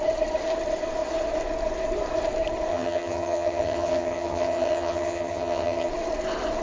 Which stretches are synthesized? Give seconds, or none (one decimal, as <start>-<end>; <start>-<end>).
2.7-5.9